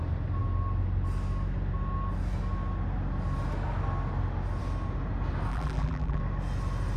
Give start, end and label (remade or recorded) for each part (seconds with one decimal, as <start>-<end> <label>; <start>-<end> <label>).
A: 0.0-5.5 recorded; 5.5-6.2 remade; 6.2-7.0 recorded